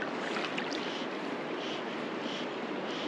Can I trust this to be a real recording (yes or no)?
yes